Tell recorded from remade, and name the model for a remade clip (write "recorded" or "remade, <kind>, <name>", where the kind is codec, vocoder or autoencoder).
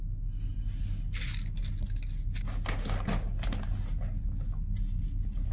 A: recorded